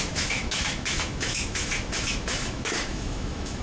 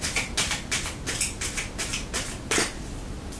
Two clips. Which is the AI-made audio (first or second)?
first